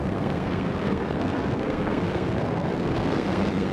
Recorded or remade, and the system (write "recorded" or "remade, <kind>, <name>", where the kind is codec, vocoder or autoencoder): remade, codec, SNAC